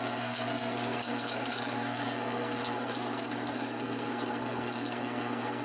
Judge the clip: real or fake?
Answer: fake